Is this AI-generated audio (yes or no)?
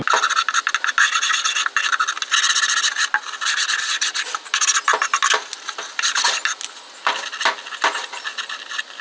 no